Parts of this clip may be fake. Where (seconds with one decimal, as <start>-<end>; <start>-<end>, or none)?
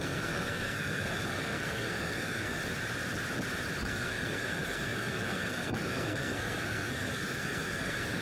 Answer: 0.0-2.6; 3.8-8.2